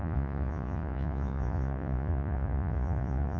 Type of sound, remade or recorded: remade